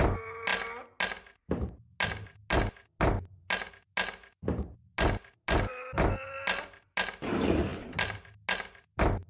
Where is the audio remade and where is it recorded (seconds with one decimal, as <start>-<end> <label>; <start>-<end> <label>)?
0.0-9.3 recorded